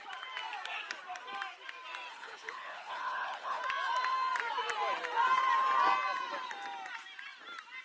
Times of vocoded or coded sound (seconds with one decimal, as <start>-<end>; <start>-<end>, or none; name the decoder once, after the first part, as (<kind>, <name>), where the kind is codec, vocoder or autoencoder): 2.1-3.6 (codec, HILCodec)